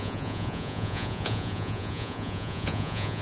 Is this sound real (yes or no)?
no